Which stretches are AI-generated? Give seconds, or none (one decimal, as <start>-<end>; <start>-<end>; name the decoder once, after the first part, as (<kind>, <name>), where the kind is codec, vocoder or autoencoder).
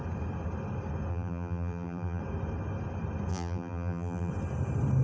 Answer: 1.1-2.2 (vocoder, BigVGAN v2); 3.3-4.3